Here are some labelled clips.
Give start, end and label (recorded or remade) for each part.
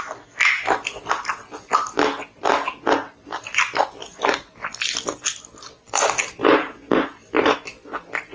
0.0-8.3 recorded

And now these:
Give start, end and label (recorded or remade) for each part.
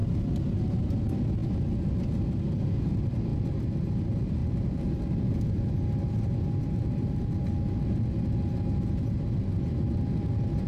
0.0-0.8 remade; 0.8-4.4 recorded; 4.4-7.1 remade; 7.1-10.7 recorded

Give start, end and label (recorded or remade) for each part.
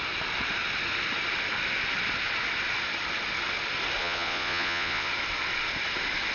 0.0-4.0 recorded; 4.0-5.1 remade; 5.1-6.3 recorded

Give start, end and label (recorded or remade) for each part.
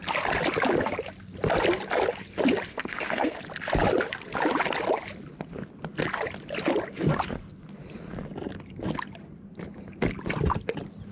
0.0-2.7 recorded; 2.7-3.4 remade; 3.4-11.1 recorded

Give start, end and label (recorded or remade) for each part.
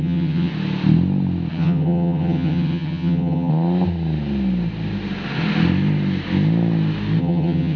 0.0-0.5 remade; 0.5-1.5 recorded; 1.5-3.5 remade; 3.5-7.2 recorded; 7.2-7.8 remade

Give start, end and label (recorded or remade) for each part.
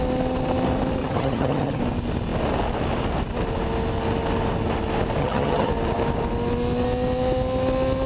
0.0-1.0 recorded; 1.0-1.8 remade; 1.8-5.2 recorded; 5.2-5.7 remade; 5.7-8.1 recorded